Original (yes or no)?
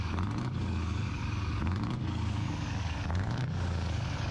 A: no